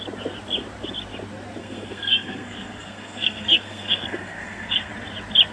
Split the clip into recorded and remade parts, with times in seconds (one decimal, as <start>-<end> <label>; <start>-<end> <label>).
0.0-1.6 recorded; 1.6-4.9 remade; 4.9-5.5 recorded